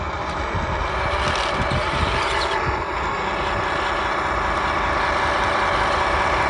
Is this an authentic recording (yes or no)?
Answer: yes